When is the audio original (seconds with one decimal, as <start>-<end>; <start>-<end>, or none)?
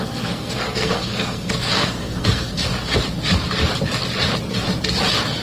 2.7-5.4